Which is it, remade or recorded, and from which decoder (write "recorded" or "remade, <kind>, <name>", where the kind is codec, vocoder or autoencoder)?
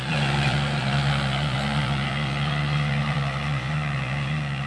remade, vocoder, Vocos